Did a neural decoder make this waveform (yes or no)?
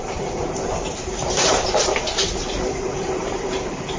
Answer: yes